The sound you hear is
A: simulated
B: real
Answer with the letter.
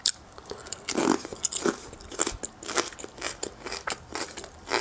B